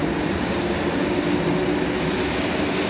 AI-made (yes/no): no